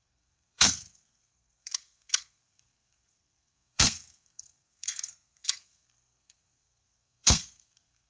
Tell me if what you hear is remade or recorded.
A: remade